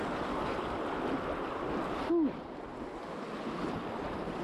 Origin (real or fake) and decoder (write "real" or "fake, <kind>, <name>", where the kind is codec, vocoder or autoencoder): real